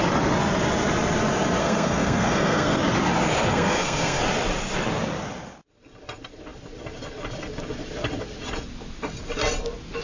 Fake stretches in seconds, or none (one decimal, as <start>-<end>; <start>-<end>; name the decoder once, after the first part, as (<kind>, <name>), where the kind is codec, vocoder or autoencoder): 1.6-2.8 (codec, SNAC); 3.5-4.2